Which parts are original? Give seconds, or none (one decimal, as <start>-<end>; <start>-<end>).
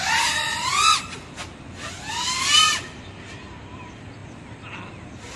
0.0-5.4